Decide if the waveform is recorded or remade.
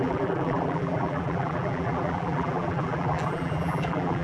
remade